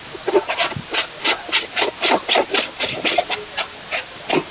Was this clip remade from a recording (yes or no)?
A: no